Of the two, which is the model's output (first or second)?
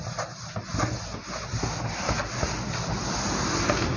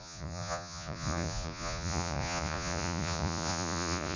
second